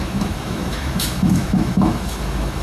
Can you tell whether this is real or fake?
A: fake